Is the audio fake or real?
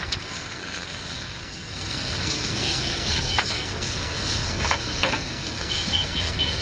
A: fake